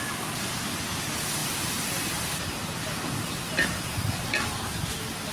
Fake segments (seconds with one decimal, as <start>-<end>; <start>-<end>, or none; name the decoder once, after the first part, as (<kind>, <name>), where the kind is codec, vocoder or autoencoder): 1.4-4.3 (vocoder, BigVGAN v2)